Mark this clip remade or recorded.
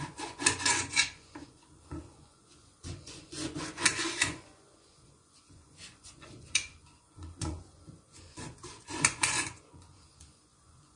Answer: remade